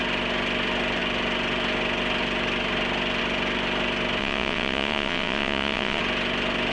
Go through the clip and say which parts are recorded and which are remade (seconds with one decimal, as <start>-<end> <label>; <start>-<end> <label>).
0.0-4.2 recorded; 4.2-6.0 remade; 6.0-6.7 recorded